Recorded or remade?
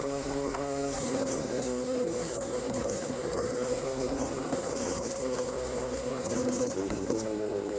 remade